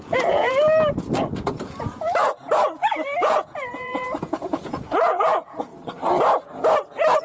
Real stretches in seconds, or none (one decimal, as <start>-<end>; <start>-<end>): 0.7-1.8; 5.7-7.2